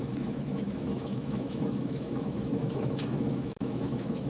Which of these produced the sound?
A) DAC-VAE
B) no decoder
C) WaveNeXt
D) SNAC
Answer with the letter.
A